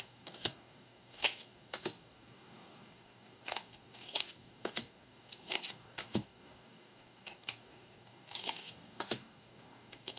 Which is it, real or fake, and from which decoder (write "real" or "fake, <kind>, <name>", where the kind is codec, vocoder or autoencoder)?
fake, codec, DAC